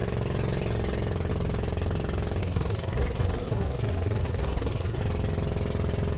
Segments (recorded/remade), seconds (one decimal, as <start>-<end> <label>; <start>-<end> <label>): 0.0-2.4 recorded; 2.4-5.0 remade; 5.0-6.2 recorded